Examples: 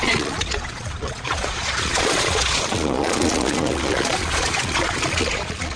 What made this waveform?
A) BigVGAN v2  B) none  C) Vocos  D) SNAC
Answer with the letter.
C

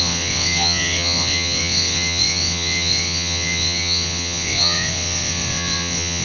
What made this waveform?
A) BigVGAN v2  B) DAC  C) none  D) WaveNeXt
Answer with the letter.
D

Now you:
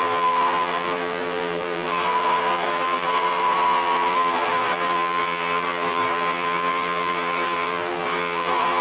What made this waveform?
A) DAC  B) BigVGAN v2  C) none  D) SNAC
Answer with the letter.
B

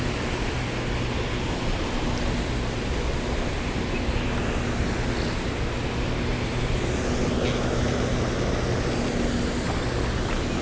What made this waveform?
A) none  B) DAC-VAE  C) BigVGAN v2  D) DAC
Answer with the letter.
A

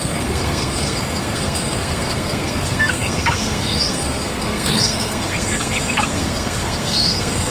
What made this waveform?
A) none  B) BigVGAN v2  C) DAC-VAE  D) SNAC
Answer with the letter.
D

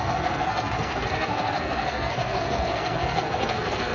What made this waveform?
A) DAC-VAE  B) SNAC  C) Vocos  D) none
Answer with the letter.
B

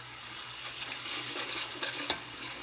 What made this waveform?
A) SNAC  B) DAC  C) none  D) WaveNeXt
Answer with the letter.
B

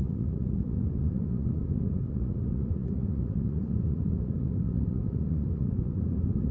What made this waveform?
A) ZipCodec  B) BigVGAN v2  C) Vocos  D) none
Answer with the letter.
C